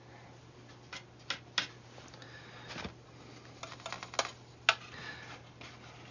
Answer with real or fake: real